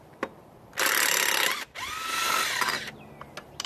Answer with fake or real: real